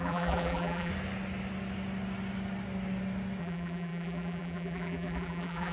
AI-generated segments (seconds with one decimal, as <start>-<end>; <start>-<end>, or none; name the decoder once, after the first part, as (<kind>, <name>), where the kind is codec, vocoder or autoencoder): 0.0-0.9 (vocoder, BigVGAN v2); 3.4-5.7